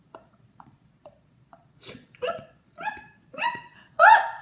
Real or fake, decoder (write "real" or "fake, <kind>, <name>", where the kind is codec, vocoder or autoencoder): fake, vocoder, Vocos